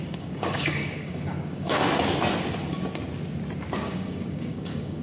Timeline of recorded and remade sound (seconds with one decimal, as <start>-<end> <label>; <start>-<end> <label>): 0.0-1.8 remade; 1.8-3.7 recorded; 3.7-5.0 remade